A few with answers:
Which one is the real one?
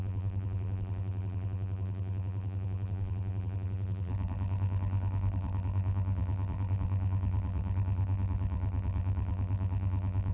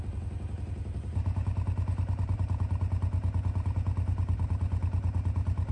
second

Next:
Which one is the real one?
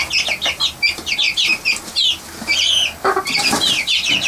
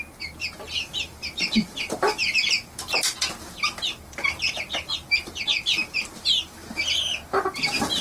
first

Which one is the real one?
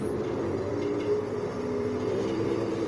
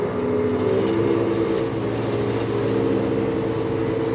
second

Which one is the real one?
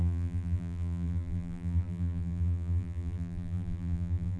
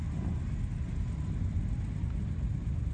second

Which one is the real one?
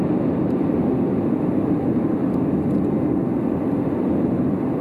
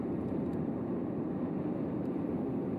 first